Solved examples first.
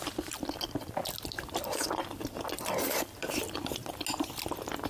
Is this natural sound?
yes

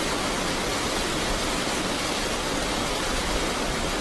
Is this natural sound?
yes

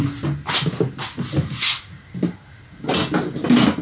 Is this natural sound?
yes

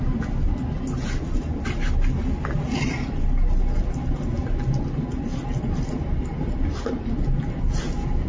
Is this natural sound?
yes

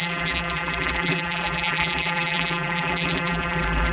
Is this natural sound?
no